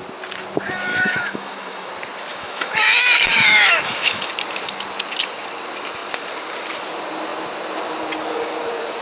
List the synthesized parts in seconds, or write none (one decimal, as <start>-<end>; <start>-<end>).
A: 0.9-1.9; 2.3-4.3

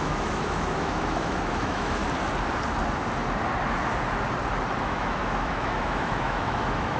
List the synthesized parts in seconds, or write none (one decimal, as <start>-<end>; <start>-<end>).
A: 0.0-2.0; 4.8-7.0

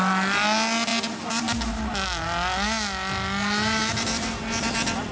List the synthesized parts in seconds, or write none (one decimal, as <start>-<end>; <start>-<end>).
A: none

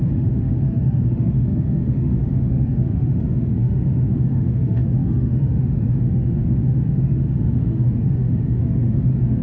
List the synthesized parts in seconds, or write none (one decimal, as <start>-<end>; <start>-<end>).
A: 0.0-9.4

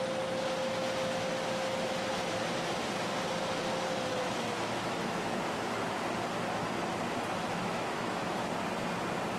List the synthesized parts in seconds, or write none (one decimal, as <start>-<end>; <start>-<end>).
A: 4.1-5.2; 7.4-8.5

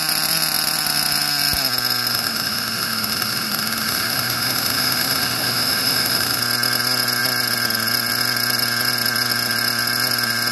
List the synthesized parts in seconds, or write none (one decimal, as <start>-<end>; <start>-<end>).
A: 2.1-6.4

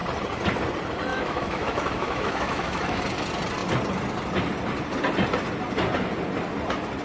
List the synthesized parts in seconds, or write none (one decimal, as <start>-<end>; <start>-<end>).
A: 1.1-3.0